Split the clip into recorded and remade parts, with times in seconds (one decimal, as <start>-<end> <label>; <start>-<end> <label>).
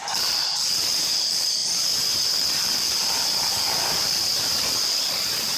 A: 0.0-5.6 remade